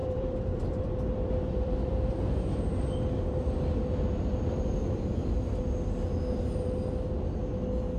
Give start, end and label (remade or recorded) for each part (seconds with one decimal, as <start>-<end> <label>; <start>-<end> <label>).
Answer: 0.0-2.2 remade; 2.2-8.0 recorded